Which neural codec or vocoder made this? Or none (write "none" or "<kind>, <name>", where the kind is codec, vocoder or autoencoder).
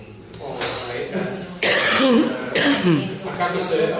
none